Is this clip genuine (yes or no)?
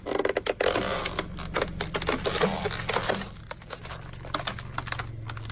yes